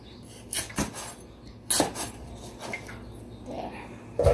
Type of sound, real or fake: real